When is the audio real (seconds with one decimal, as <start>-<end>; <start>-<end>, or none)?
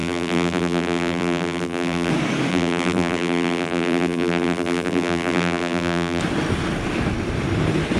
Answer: 2.1-2.5; 6.2-8.0